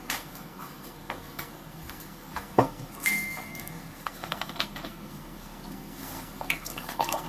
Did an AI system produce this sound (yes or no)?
yes